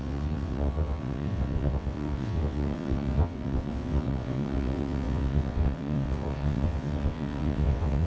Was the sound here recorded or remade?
remade